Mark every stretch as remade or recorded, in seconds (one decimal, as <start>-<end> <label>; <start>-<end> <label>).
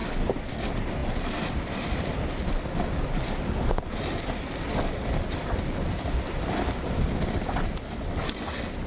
0.0-8.9 recorded